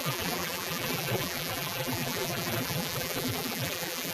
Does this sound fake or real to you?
fake